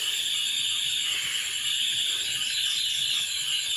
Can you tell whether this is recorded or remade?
recorded